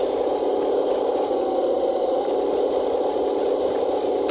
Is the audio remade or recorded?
recorded